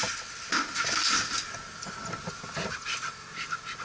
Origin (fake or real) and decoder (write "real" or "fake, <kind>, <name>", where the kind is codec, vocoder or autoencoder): real